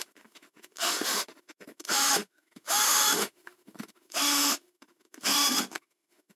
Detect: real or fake fake